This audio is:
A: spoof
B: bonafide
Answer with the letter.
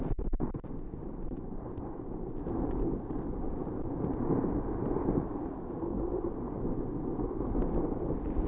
B